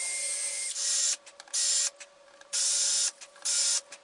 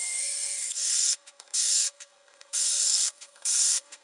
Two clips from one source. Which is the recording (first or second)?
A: first